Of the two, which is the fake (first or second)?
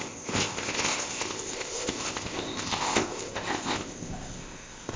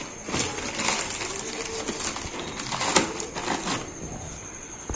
first